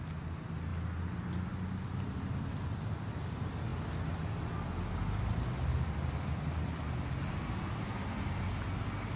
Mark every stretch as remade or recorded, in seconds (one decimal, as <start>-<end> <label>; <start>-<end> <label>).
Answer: 0.0-9.2 recorded